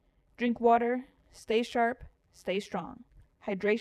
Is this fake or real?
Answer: fake